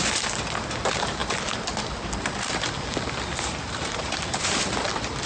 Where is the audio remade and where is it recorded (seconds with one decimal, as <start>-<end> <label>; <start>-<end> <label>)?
0.0-5.3 recorded